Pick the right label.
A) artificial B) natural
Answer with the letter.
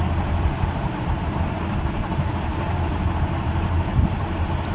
B